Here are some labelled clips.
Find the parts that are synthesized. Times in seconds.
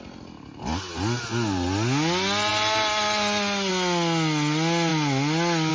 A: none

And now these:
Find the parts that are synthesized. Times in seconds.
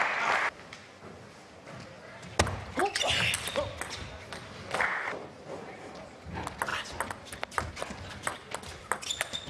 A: none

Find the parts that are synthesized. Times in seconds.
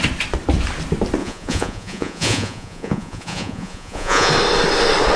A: 1.2-4.3 (vocoder, Vocos)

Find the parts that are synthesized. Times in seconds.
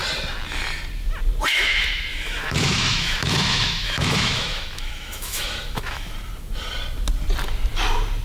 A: 1.5-6.1 (autoencoder, DAC-VAE)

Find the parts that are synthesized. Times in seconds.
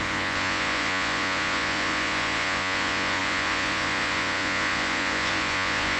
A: 0.0-6.0 (vocoder, Vocos)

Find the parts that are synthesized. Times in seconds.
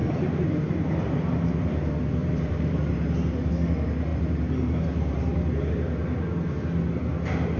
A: 0.0-3.5 (vocoder, BigVGAN v2); 4.1-5.7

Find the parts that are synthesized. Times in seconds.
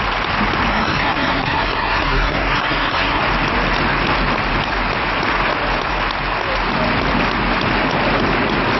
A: 0.7-3.2 (codec, SNAC)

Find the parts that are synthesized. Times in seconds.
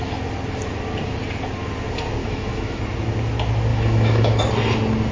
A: 2.2-2.8 (autoencoder, DAC-VAE); 3.7-4.4